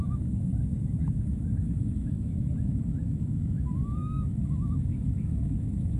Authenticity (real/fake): fake